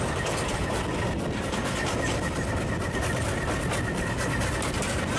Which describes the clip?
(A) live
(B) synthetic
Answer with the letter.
A